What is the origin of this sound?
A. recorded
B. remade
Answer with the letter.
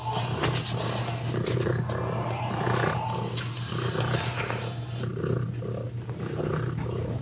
A